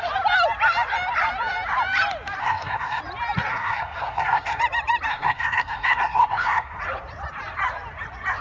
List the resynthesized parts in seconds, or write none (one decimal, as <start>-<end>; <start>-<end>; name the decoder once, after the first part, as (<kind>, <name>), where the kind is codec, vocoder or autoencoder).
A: 2.4-3.0 (codec, SNAC); 3.5-4.6; 5.1-6.8